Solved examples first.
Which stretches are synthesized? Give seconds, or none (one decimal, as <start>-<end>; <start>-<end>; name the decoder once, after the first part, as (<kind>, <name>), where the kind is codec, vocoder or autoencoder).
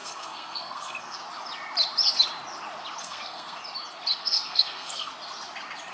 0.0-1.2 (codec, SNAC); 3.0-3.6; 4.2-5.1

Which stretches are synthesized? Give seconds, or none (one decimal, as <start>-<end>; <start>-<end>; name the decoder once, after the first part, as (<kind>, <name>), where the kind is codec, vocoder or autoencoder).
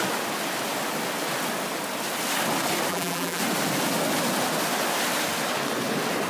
2.9-3.4 (vocoder, BigVGAN v2)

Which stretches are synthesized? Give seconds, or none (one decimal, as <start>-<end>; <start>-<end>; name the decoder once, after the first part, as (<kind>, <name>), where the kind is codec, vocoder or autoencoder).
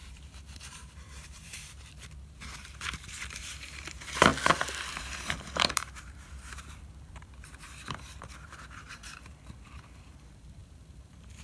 0.0-4.3 (vocoder, BigVGAN v2); 4.9-11.4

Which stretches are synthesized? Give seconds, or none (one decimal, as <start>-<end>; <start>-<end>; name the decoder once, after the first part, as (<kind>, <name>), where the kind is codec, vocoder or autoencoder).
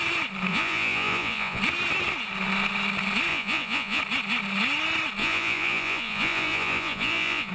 0.5-1.6 (vocoder, Vocos); 3.3-4.0; 5.2-7.5